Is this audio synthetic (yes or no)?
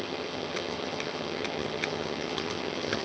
yes